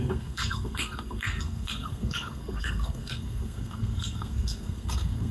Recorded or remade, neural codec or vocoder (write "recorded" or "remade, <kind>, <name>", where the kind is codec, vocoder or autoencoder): remade, codec, SNAC